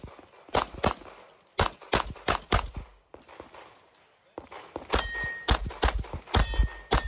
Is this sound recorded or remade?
recorded